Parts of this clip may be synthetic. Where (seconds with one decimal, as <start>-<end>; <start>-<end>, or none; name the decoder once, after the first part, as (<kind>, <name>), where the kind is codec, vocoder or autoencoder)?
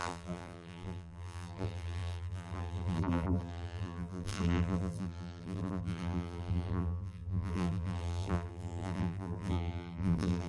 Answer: 0.0-10.5 (vocoder, BigVGAN v2)